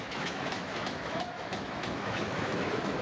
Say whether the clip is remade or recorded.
remade